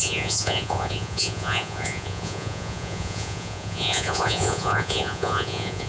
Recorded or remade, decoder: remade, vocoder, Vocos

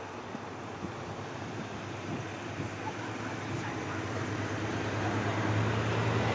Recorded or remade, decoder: recorded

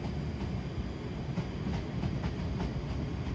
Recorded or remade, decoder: recorded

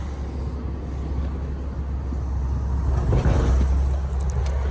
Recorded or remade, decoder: recorded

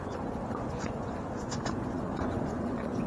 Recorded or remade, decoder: remade, vocoder, Vocos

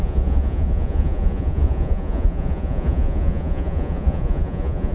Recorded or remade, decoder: remade, vocoder, Vocos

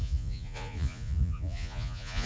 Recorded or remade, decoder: remade, vocoder, Vocos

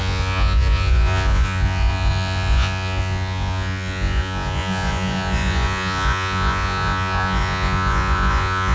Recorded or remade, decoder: remade, vocoder, Vocos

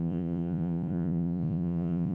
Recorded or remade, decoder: remade, vocoder, Vocos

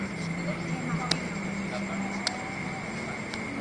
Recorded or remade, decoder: recorded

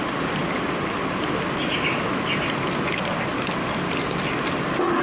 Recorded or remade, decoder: recorded